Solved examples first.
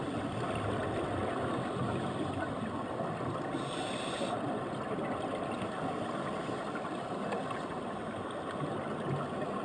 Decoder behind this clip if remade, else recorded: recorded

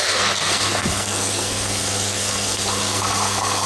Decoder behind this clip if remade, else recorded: remade, codec, SNAC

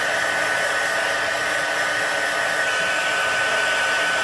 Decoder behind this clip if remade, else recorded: recorded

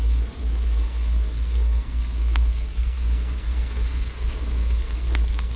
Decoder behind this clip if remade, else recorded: remade, codec, SNAC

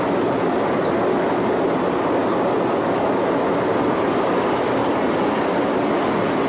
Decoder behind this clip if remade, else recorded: recorded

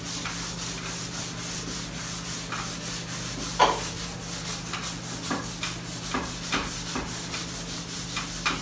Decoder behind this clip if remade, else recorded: recorded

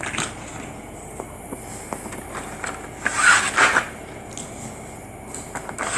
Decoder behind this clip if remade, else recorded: recorded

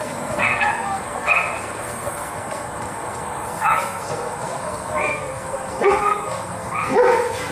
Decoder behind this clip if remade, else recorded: remade, codec, SNAC